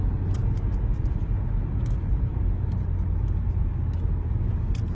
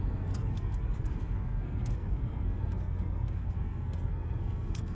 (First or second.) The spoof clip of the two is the second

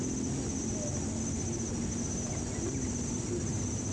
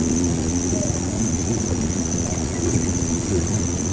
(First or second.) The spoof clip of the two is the second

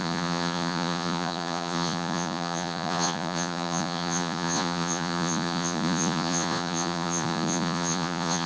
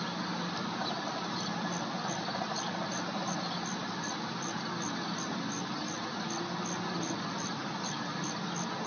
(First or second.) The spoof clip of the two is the first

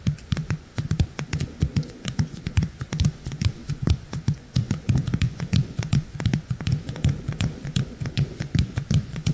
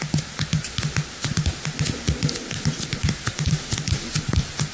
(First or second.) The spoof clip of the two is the first